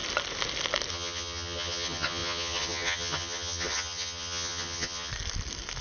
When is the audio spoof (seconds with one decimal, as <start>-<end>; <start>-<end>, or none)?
0.9-5.1